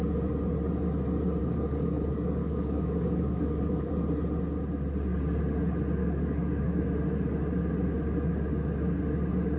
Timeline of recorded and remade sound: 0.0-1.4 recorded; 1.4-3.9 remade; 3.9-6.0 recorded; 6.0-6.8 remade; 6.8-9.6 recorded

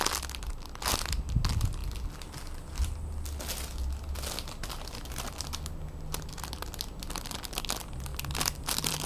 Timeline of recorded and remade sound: 0.0-8.1 recorded; 8.1-9.1 remade

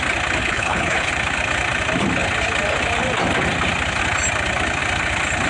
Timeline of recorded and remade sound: 0.0-0.4 recorded; 0.4-1.1 remade; 1.1-5.5 recorded

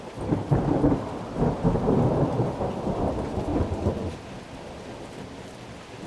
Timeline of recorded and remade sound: 0.0-6.1 recorded

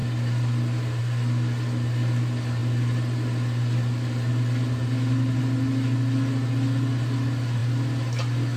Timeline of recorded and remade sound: 0.0-8.6 recorded